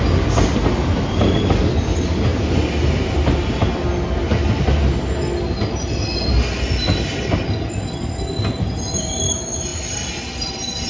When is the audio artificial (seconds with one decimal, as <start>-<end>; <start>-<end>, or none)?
none